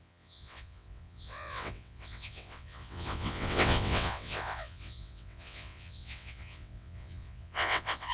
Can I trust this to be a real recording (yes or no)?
no